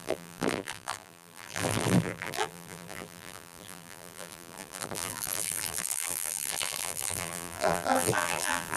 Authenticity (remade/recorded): remade